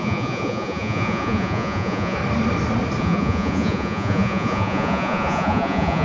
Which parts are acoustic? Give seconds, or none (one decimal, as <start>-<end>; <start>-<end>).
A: 2.2-3.0